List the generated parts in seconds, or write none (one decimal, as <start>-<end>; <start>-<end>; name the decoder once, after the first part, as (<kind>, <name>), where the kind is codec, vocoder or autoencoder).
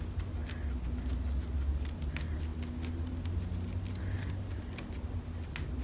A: none